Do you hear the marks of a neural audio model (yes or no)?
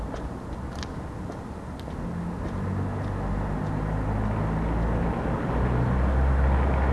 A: no